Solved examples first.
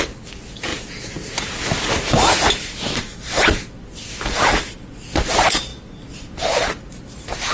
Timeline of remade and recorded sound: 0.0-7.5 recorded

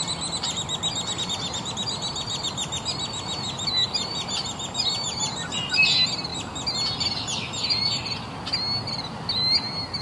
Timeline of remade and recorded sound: 0.0-10.0 recorded

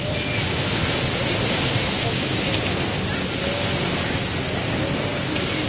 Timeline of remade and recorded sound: 0.0-5.7 recorded

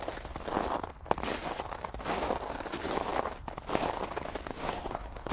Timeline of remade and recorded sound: 0.0-4.5 recorded; 4.5-5.3 remade